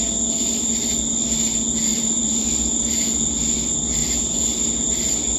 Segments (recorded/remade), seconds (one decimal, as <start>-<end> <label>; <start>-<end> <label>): 0.0-1.9 recorded; 1.9-2.9 remade; 2.9-5.4 recorded